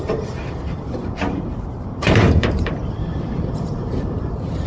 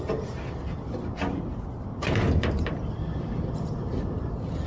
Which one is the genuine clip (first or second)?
second